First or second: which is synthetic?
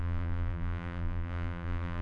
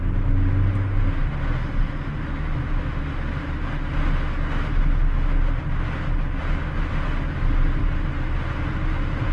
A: first